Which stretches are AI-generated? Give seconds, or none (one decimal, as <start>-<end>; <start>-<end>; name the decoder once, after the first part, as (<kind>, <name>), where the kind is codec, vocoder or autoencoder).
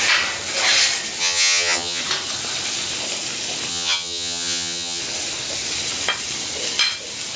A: 1.2-2.0 (vocoder, HiFi-GAN); 3.7-5.0